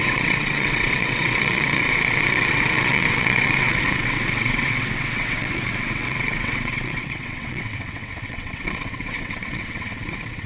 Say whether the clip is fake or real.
fake